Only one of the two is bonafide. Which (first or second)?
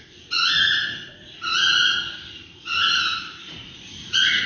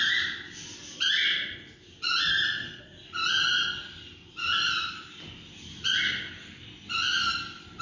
second